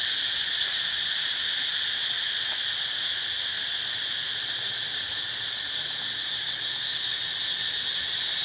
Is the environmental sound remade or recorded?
recorded